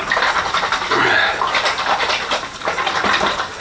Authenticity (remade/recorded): recorded